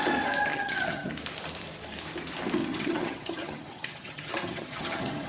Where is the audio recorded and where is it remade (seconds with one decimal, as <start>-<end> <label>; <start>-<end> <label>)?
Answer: 0.0-0.5 recorded; 0.5-1.1 remade; 1.1-2.6 recorded; 2.6-5.3 remade

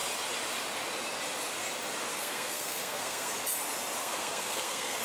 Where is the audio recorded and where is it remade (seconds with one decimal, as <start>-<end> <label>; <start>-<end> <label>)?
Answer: 0.0-2.1 recorded; 2.1-3.3 remade; 3.3-4.0 recorded; 4.0-5.0 remade

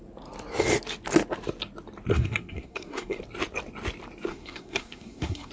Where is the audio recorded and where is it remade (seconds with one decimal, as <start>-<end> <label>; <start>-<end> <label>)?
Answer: 0.0-2.1 recorded; 2.1-3.2 remade; 3.2-4.3 recorded; 4.3-5.5 remade

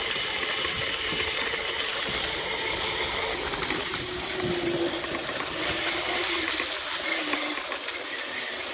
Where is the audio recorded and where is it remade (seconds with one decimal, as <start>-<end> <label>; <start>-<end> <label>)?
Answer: 0.0-8.7 recorded

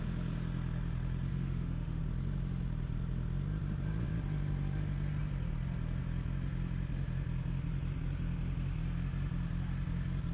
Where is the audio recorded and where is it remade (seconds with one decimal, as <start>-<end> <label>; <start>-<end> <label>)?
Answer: 0.0-1.3 recorded; 1.3-2.0 remade; 2.0-10.3 recorded

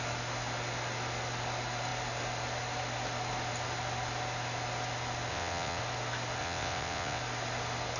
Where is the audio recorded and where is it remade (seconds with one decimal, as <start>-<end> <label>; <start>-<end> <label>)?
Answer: 0.0-5.3 recorded; 5.3-5.8 remade; 5.8-6.4 recorded; 6.4-7.2 remade; 7.2-8.0 recorded

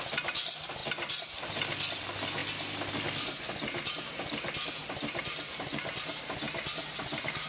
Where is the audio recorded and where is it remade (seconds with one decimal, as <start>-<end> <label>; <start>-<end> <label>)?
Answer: 0.0-4.8 recorded; 4.8-6.4 remade; 6.4-7.5 recorded

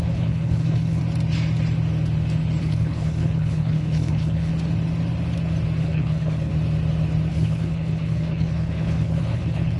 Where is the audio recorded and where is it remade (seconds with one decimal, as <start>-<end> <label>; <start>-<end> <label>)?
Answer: 0.0-1.0 remade; 1.0-2.6 recorded; 2.6-4.5 remade; 4.5-5.8 recorded; 5.8-6.5 remade; 6.5-7.3 recorded; 7.3-9.8 remade